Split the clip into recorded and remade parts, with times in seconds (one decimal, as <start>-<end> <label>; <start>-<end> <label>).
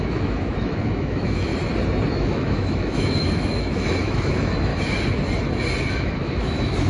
0.0-1.5 remade; 1.5-2.1 recorded; 2.1-4.7 remade; 4.7-5.9 recorded; 5.9-6.9 remade